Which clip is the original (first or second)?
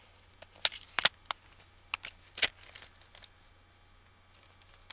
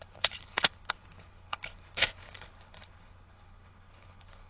first